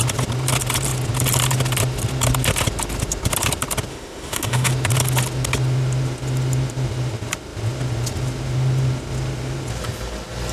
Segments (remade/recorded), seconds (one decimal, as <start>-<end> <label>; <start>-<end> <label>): 0.0-3.9 recorded; 3.9-4.7 remade; 4.7-10.5 recorded